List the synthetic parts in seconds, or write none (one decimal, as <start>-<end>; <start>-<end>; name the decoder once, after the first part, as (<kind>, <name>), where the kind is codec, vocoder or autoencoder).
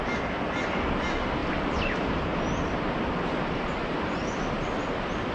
none